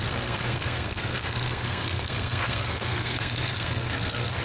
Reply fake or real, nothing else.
fake